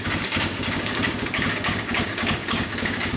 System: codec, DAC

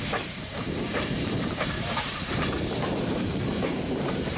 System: vocoder, BigVGAN v2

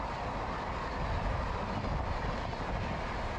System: none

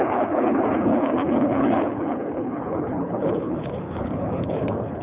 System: codec, HILCodec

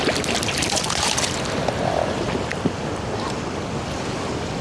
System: none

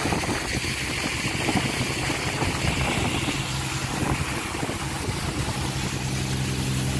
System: none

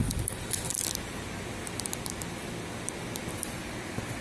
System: none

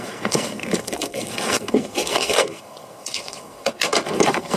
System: codec, SNAC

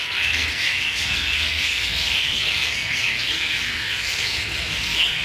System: codec, SNAC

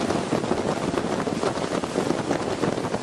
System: none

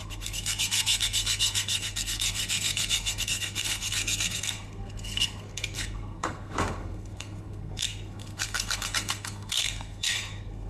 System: codec, SNAC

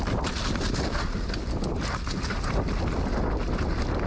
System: none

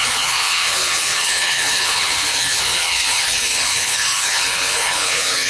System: codec, HILCodec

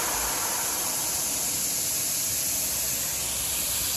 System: none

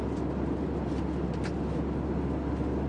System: none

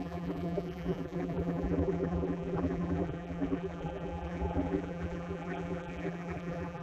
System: vocoder, BigVGAN v2